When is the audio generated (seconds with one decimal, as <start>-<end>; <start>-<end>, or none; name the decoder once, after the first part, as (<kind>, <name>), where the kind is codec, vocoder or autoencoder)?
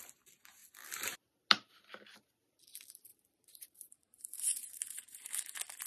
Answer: 3.1-5.4 (vocoder, BigVGAN v2)